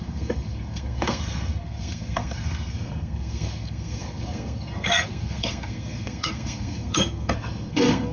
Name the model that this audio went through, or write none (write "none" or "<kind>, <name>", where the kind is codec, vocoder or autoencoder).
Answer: codec, SNAC